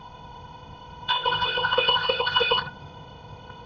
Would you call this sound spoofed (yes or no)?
yes